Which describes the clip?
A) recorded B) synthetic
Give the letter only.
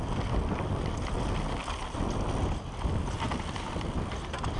A